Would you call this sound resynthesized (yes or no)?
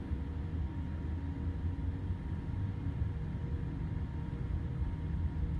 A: no